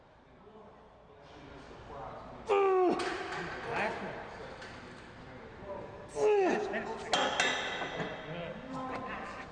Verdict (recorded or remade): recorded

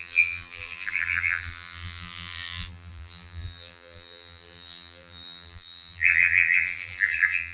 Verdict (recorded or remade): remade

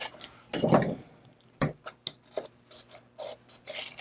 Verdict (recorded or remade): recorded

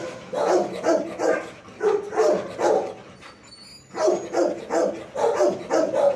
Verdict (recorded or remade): recorded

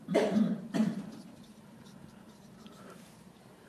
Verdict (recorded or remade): remade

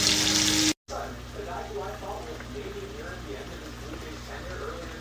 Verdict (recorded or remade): recorded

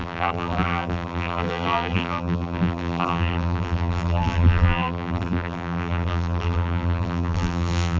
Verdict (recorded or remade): remade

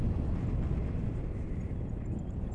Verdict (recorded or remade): recorded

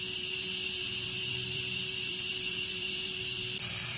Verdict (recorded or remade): remade